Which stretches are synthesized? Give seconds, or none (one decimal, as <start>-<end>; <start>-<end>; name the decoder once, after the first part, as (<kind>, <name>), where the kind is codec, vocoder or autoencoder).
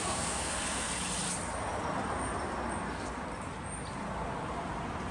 0.0-0.9 (codec, SNAC)